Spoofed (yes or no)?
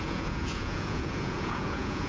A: yes